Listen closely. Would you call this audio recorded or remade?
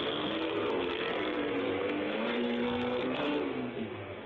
remade